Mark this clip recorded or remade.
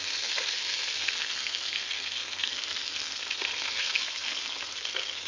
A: remade